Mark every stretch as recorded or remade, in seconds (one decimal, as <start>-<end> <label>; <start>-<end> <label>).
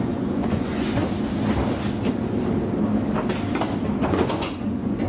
0.0-1.0 remade; 1.0-4.1 recorded; 4.1-5.1 remade